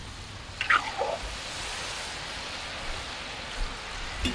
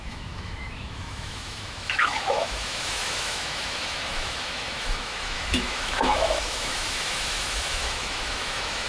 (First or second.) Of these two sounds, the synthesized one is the second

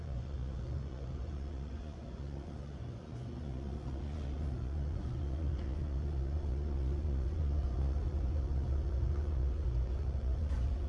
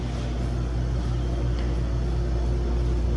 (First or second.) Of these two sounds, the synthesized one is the first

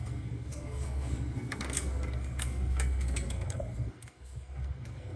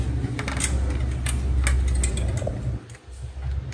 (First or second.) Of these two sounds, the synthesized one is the first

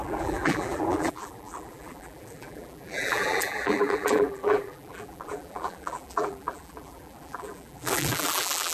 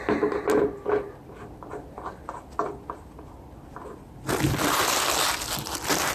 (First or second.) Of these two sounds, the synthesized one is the first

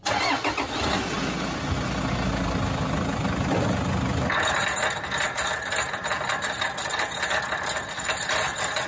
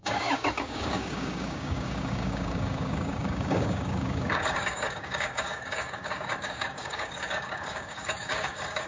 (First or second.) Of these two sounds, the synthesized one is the second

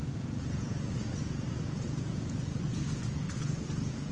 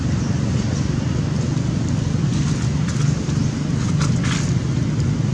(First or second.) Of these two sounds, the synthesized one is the first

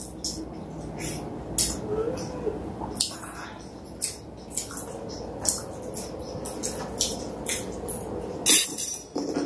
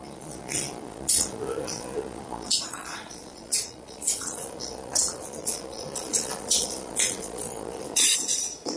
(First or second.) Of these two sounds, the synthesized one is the second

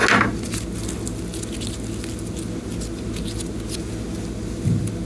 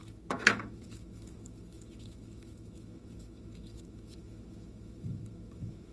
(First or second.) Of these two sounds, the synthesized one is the second